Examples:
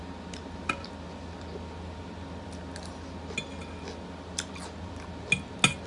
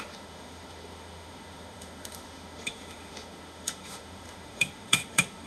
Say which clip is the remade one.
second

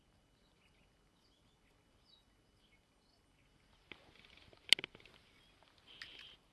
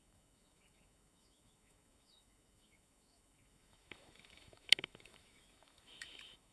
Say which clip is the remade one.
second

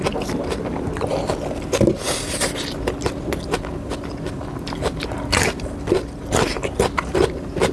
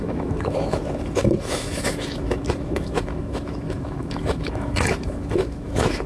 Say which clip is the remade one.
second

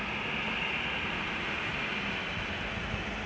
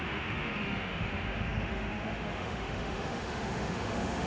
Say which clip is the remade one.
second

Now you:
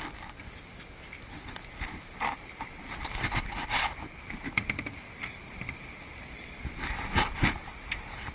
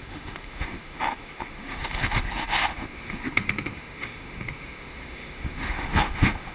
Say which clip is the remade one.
second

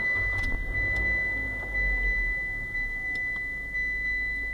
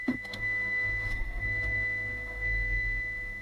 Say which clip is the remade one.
second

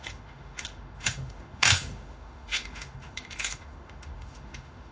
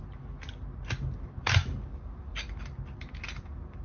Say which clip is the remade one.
first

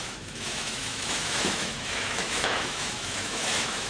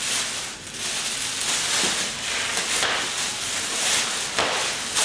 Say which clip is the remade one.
first